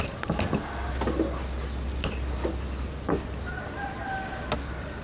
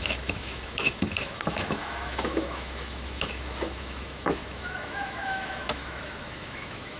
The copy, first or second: second